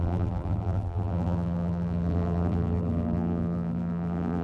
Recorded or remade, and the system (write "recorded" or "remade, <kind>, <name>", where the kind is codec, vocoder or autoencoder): remade, vocoder, BigVGAN v2